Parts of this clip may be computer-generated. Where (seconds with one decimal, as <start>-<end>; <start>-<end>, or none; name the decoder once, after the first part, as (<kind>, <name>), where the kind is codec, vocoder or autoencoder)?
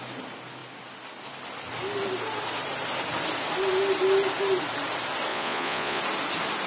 5.3-6.0 (vocoder, Vocos)